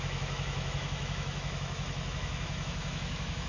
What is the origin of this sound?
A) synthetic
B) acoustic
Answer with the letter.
A